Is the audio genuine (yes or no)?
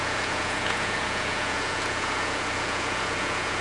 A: no